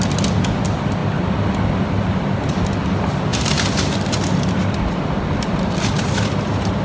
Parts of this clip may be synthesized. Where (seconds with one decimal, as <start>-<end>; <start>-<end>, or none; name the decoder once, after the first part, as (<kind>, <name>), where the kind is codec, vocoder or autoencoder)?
none